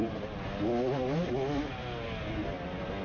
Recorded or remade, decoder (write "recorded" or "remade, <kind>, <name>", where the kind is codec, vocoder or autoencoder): recorded